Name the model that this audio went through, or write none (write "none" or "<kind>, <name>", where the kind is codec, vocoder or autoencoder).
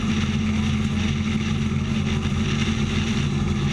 none